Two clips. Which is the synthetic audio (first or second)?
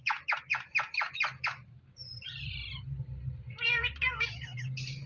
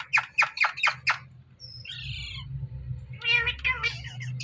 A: first